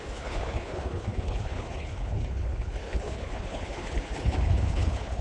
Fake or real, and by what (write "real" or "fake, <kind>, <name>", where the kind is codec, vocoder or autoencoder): fake, codec, HILCodec